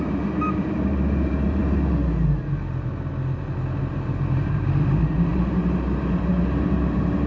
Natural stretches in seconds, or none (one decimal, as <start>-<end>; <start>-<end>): 1.6-3.8